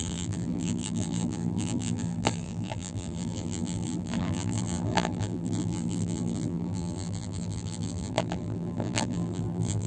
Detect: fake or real fake